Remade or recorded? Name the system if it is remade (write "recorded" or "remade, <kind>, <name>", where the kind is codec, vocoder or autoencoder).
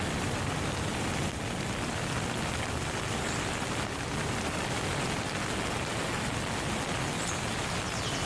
recorded